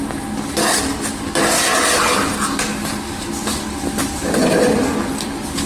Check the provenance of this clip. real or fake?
real